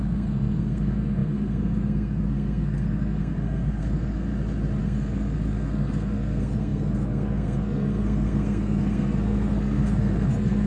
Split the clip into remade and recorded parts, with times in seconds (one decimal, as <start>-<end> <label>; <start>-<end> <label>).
0.0-4.3 remade; 4.3-4.8 recorded; 4.8-10.7 remade